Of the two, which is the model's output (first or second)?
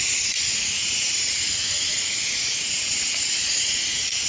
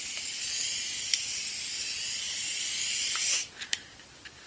first